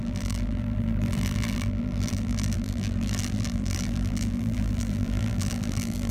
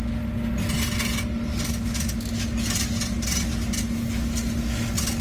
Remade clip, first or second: first